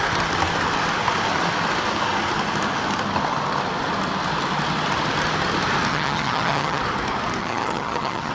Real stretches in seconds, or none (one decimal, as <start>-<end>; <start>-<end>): 0.0-5.9; 6.8-7.4

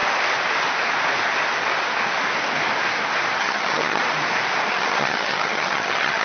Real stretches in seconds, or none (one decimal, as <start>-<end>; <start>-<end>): 0.0-3.4; 4.0-4.7

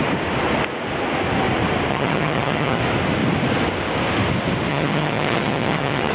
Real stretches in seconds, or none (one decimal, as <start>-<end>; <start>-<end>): 0.0-1.9; 2.8-4.7